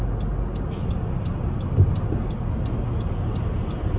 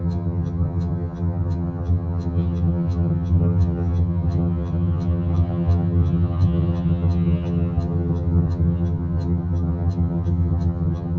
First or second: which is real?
first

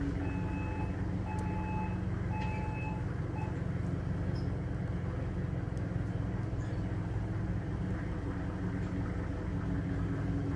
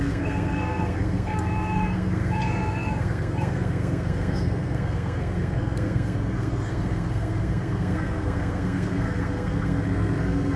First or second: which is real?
first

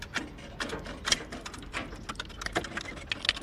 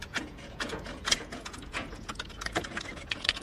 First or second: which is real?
first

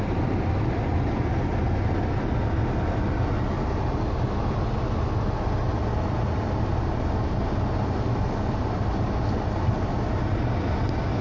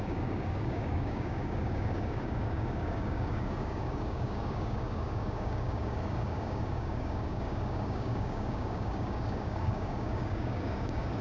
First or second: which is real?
first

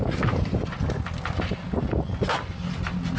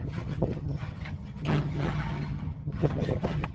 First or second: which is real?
first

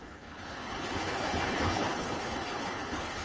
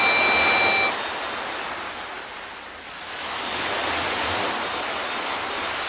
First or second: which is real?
second